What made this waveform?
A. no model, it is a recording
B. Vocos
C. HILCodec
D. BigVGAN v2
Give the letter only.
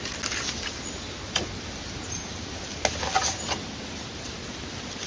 A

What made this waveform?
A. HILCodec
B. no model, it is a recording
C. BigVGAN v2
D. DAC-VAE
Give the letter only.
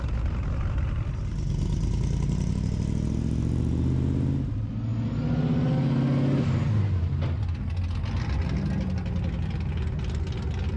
B